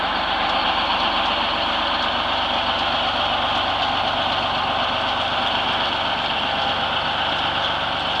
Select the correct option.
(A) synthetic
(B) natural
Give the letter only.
B